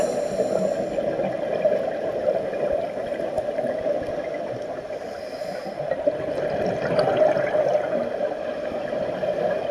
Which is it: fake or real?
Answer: real